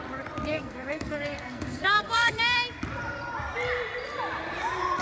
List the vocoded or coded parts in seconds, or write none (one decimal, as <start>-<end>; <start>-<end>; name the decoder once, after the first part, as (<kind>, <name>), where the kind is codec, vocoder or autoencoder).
0.5-2.4 (codec, SNAC)